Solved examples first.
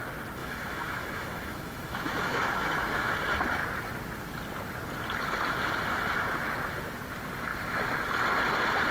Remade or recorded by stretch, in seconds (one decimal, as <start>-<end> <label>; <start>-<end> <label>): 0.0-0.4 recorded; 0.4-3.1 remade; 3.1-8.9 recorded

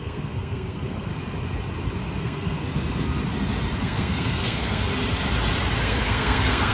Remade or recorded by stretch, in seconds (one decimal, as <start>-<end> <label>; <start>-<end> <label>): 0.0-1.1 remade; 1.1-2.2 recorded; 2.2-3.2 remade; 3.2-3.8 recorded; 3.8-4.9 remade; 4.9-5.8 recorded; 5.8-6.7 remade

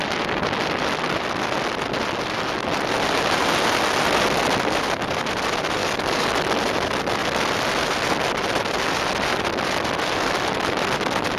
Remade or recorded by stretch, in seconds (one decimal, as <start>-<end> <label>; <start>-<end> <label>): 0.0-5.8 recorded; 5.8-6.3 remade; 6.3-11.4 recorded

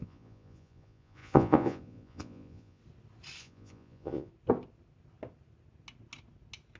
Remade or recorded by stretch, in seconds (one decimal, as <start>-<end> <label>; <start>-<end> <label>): 0.0-2.8 remade; 2.8-3.4 recorded; 3.4-4.3 remade; 4.3-6.8 recorded

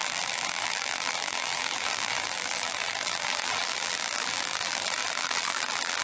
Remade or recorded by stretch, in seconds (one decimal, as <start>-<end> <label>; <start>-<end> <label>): 0.0-6.0 remade